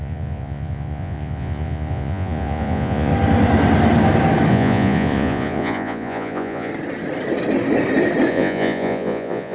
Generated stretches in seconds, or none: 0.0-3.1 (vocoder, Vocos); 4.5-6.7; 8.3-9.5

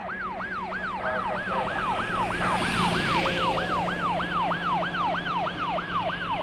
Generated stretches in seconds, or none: none

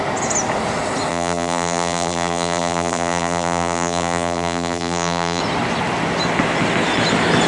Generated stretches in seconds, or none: 1.1-5.4 (vocoder, BigVGAN v2)